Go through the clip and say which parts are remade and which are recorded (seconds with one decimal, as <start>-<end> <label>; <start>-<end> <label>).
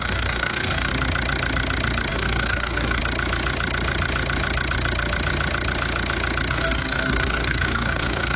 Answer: 0.0-0.9 remade; 0.9-2.1 recorded; 2.1-3.0 remade; 3.0-6.5 recorded; 6.5-8.4 remade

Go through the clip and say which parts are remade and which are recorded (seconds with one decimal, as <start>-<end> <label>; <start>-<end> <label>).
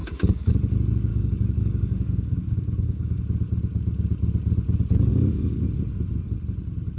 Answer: 0.0-0.5 remade; 0.5-1.1 recorded; 1.1-3.2 remade; 3.2-5.1 recorded; 5.1-5.7 remade; 5.7-7.0 recorded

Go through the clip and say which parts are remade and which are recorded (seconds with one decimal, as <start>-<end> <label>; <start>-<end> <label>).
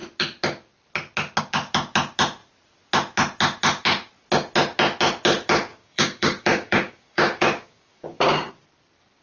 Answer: 0.0-5.7 recorded; 5.7-8.5 remade; 8.5-9.2 recorded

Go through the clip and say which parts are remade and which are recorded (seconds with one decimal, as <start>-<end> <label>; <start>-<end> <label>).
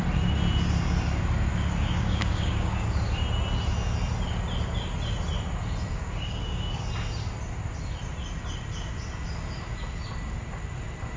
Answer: 0.0-1.5 recorded; 1.5-3.0 remade; 3.0-5.9 recorded; 5.9-6.8 remade; 6.8-11.2 recorded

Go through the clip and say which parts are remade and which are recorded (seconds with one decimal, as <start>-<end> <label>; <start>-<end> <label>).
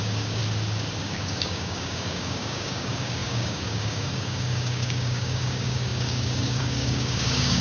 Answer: 0.0-0.4 remade; 0.4-1.0 recorded; 1.0-7.6 remade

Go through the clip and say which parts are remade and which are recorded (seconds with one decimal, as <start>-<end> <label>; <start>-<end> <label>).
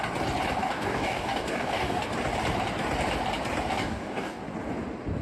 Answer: 0.0-0.6 recorded; 0.6-2.1 remade; 2.1-3.8 recorded; 3.8-4.4 remade; 4.4-5.2 recorded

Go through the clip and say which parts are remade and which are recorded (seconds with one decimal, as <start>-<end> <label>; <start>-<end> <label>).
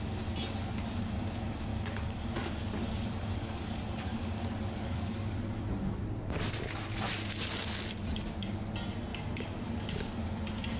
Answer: 0.0-1.7 recorded; 1.7-5.6 remade; 5.6-9.1 recorded; 9.1-10.2 remade; 10.2-10.8 recorded